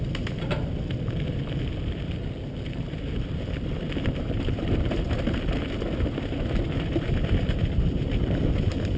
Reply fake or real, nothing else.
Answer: real